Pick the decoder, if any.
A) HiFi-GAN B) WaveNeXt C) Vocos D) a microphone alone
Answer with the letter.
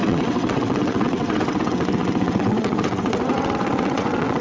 B